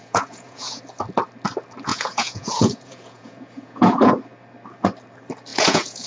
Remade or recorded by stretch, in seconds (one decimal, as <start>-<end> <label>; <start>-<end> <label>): 0.0-0.8 remade; 0.8-1.9 recorded; 1.9-4.1 remade; 4.1-5.5 recorded; 5.5-6.1 remade